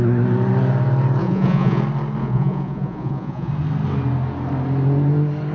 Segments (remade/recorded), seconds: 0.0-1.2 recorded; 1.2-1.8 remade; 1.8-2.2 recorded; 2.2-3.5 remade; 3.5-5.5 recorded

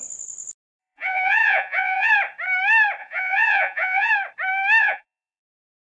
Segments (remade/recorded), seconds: 0.0-0.8 recorded; 0.8-2.1 remade; 2.1-3.0 recorded; 3.0-4.1 remade; 4.1-4.8 recorded; 4.8-5.4 remade; 5.4-5.9 recorded

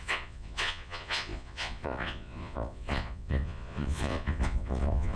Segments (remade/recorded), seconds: 0.0-5.2 remade

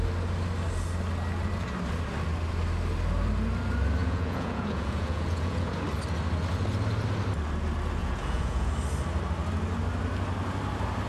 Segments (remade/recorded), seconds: 0.0-4.0 recorded; 4.0-5.7 remade; 5.7-8.0 recorded; 8.0-8.7 remade; 8.7-11.1 recorded

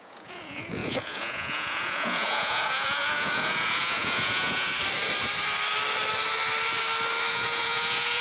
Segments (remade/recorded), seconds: 0.0-4.7 remade; 4.7-7.3 recorded; 7.3-8.2 remade

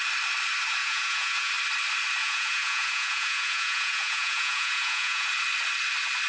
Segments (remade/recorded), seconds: 0.0-0.8 recorded; 0.8-1.5 remade; 1.5-2.2 recorded; 2.2-5.3 remade; 5.3-6.3 recorded

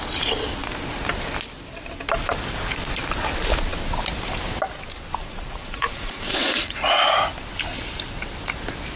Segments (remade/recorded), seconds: 0.0-5.2 recorded; 5.2-7.0 remade; 7.0-9.0 recorded

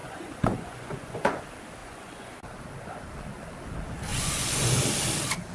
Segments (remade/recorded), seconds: 0.0-1.4 remade; 1.4-1.8 recorded; 1.8-2.3 remade; 2.3-4.1 recorded; 4.1-4.7 remade; 4.7-5.5 recorded